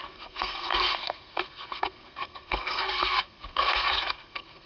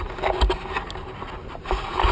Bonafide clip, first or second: second